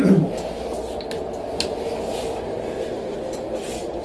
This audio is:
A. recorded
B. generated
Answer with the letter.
A